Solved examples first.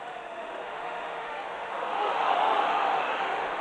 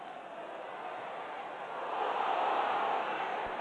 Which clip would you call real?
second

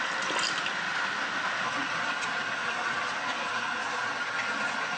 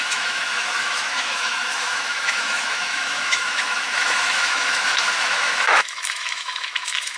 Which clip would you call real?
first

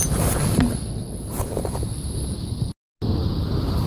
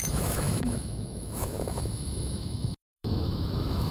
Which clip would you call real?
first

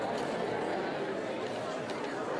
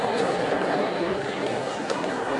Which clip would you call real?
first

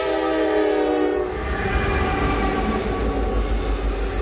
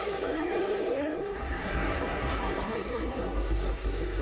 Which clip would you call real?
first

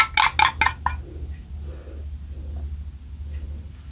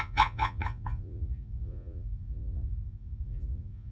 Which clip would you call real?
first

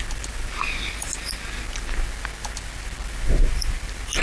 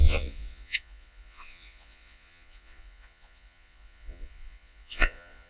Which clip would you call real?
first